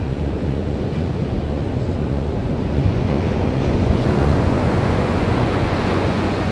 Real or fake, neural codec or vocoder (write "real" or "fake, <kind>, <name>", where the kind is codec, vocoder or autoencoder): fake, vocoder, Vocos